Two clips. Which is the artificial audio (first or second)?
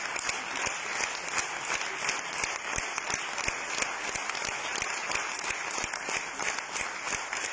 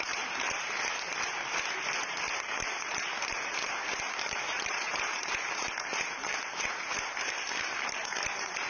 second